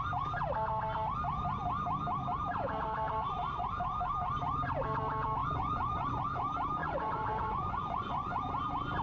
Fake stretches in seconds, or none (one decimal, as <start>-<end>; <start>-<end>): 5.4-6.2; 6.8-8.4